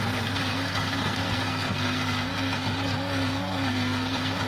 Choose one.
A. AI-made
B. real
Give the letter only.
A